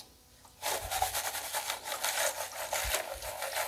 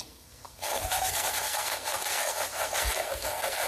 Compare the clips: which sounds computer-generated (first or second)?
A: second